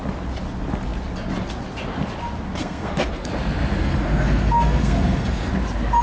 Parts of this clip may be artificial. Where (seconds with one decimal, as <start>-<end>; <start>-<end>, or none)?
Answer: 2.6-3.3; 3.8-5.5